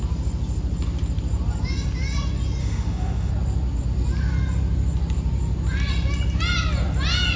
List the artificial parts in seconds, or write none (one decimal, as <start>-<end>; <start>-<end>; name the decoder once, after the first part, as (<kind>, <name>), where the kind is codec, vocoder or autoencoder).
2.6-3.3 (autoencoder, DAC-VAE)